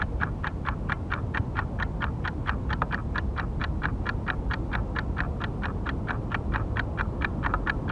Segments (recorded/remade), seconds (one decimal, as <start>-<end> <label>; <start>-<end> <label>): 0.0-7.9 recorded